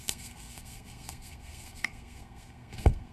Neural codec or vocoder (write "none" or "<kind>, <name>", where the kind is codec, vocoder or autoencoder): codec, SNAC